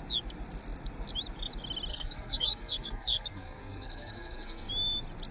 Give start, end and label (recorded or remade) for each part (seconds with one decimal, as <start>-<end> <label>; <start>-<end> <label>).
0.0-1.9 recorded; 1.9-4.7 remade; 4.7-5.3 recorded